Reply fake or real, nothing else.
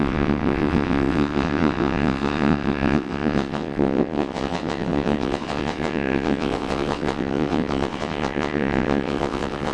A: fake